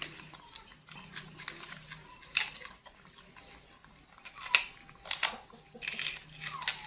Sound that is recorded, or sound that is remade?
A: recorded